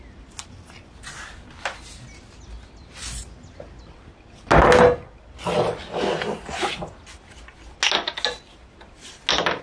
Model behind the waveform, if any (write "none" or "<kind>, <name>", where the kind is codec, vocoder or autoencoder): none